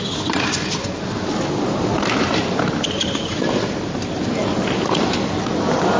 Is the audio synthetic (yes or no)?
no